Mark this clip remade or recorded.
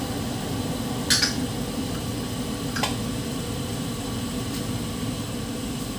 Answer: recorded